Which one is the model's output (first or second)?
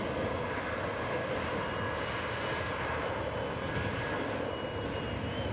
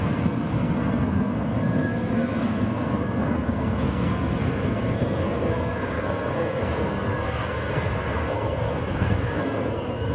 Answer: second